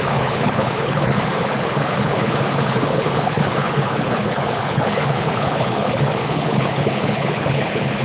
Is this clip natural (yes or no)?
no